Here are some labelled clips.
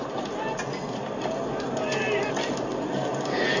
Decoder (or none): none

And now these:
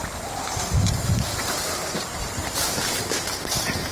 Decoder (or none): vocoder, BigVGAN v2